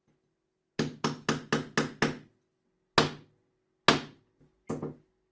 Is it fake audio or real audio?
real